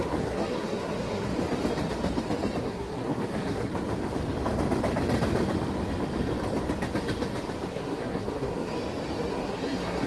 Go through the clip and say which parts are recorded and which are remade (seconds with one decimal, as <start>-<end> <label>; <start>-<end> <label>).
0.0-1.3 remade; 1.3-2.6 recorded; 2.6-3.7 remade; 3.7-7.7 recorded; 7.7-8.7 remade; 8.7-9.3 recorded; 9.3-10.1 remade